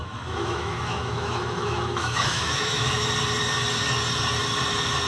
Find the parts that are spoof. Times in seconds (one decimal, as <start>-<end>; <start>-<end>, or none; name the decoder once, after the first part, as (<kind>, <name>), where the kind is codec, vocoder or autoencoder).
0.0-3.1 (autoencoder, DAC-VAE)

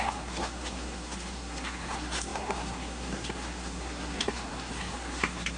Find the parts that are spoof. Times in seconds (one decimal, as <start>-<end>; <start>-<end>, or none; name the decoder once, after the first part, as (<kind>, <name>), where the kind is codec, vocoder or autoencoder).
0.0-5.6 (codec, SNAC)

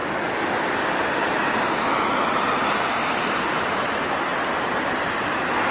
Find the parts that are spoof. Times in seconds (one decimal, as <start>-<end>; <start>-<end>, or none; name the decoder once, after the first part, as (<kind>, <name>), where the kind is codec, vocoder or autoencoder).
none

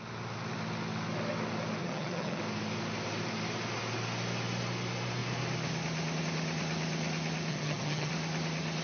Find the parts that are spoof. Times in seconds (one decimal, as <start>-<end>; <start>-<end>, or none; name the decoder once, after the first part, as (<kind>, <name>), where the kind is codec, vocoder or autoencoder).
1.8-2.4 (vocoder, HiFi-GAN); 7.5-8.1